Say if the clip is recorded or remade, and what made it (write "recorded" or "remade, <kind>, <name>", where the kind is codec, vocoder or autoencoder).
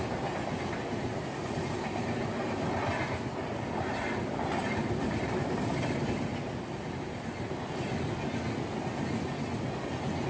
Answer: recorded